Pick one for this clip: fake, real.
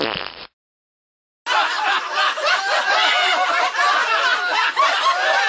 real